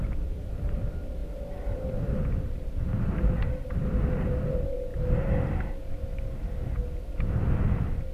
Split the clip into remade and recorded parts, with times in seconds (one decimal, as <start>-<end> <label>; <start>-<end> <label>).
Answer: 0.0-1.2 remade; 1.2-2.2 recorded; 2.2-4.9 remade; 4.9-7.6 recorded; 7.6-8.1 remade